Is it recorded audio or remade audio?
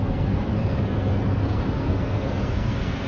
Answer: remade